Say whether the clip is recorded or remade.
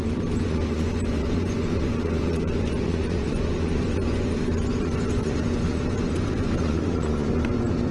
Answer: remade